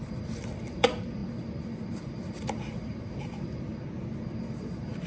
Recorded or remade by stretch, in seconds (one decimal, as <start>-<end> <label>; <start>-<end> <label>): 0.0-3.7 remade; 3.7-4.6 recorded; 4.6-5.1 remade